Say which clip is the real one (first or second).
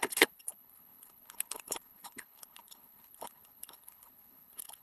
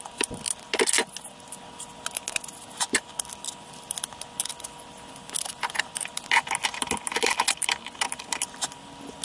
second